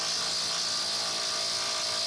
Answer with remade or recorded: recorded